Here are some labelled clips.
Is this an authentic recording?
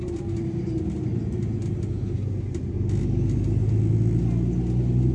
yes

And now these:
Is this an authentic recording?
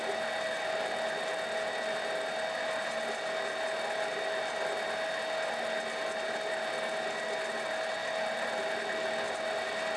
yes